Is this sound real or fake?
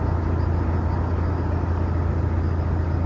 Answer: real